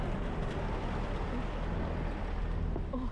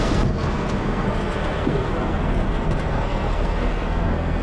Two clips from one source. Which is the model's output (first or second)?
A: second